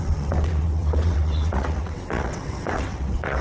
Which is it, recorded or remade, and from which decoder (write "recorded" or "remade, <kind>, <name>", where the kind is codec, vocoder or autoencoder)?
remade, vocoder, WaveNeXt